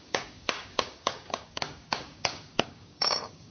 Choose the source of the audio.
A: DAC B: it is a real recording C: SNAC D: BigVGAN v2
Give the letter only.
A